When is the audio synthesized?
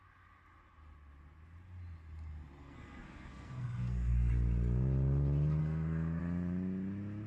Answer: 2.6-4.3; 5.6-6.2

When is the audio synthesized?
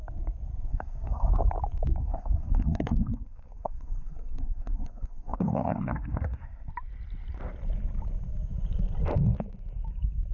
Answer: 0.7-1.3; 2.0-6.7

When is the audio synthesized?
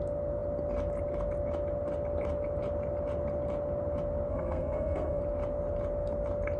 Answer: 4.3-5.2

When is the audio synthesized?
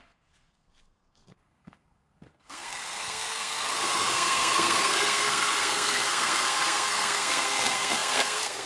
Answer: 0.0-8.7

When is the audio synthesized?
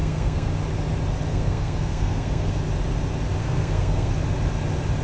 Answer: 0.0-0.5; 1.3-2.6; 3.4-4.1